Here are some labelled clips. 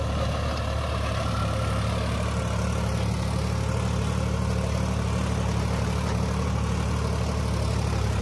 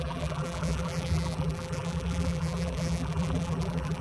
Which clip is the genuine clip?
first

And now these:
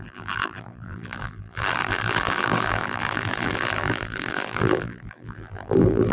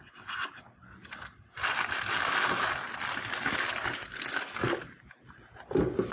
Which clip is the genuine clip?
second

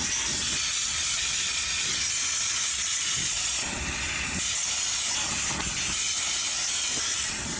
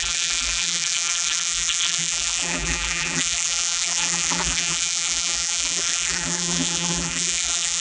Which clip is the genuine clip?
first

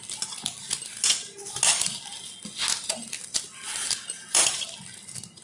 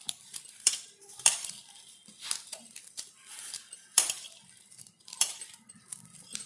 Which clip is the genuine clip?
first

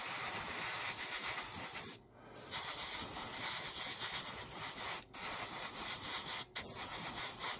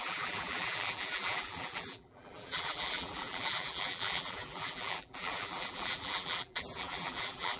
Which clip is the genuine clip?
first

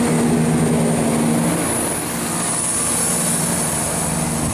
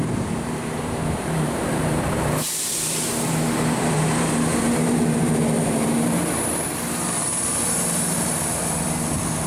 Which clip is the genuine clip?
first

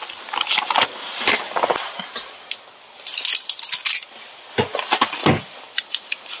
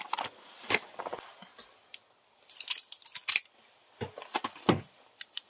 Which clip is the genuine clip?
first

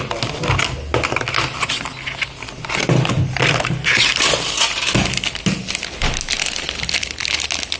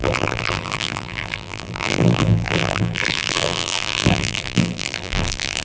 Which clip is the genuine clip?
first